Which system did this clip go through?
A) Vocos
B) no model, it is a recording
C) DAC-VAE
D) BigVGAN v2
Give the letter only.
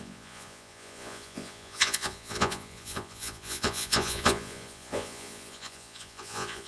A